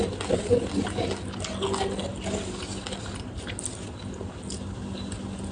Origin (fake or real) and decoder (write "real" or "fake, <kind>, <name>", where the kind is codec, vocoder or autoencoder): real